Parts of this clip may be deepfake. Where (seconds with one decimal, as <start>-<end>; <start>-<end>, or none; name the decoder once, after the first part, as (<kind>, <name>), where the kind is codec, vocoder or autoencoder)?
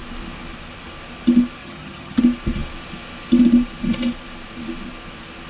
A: 1.6-2.2 (vocoder, HiFi-GAN)